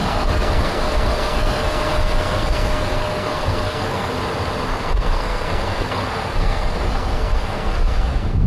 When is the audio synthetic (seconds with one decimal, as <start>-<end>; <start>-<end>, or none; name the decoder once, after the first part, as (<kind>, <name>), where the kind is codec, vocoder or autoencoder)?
0.0-4.1 (codec, SNAC); 4.7-8.5